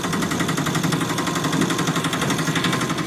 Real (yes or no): yes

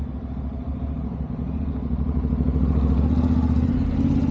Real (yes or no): yes